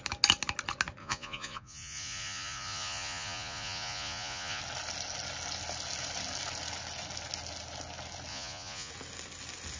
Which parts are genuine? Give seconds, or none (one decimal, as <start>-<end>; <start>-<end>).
0.0-1.0; 4.6-8.3; 8.9-9.8